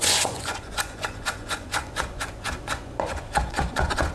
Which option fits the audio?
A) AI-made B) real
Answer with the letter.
A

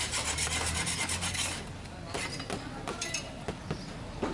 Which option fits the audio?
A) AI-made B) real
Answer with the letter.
B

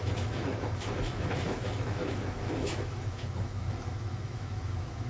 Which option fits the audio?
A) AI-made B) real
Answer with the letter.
A